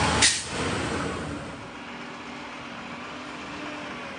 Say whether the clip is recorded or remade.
recorded